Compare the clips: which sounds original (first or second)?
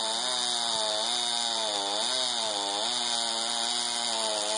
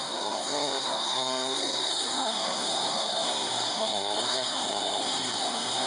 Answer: first